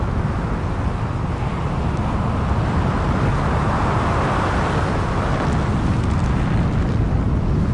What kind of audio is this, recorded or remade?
recorded